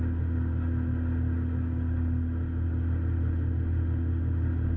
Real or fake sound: real